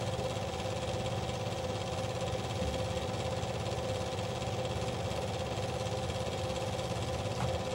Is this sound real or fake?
real